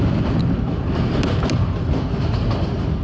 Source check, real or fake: real